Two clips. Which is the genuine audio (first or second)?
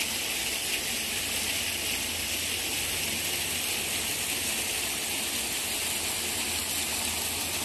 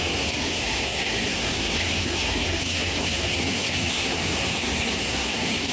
first